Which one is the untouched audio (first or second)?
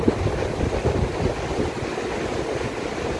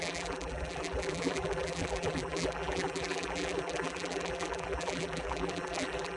first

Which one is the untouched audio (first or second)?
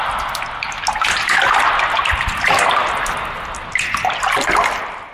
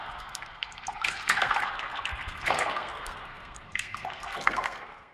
first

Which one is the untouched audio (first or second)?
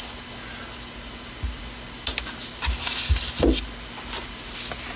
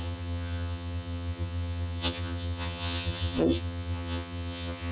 first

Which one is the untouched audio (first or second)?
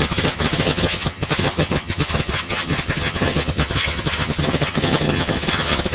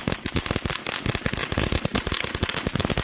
second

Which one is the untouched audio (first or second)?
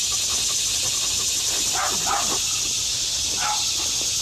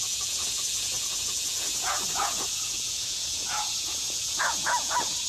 first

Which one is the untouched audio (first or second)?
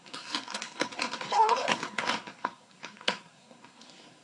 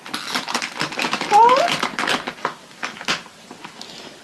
second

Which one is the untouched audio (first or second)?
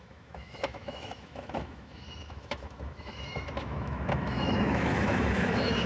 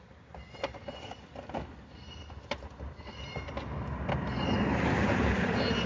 second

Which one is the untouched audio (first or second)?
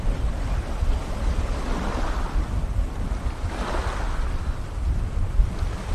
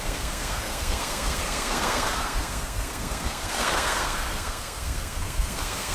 first